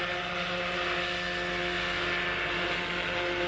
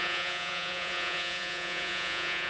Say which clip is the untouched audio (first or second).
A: first